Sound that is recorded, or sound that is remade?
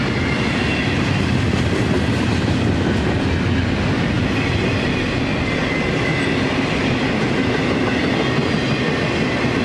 recorded